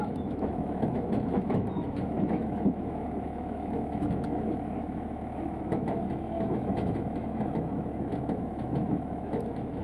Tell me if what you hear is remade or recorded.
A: remade